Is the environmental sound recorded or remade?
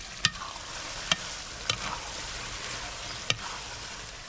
recorded